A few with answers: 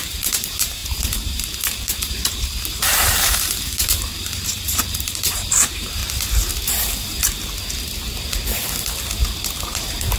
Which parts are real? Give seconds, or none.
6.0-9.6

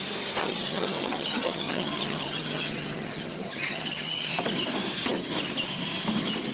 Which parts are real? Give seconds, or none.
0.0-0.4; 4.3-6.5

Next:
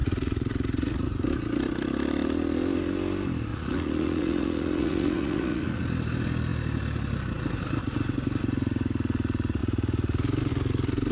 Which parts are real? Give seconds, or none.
1.1-3.5; 5.8-11.1

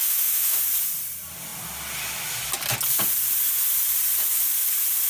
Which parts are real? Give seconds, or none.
0.6-5.1

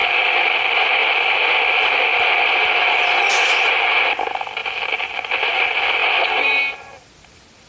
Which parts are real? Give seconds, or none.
0.0-1.0; 3.3-4.6; 5.5-6.0; 6.6-7.7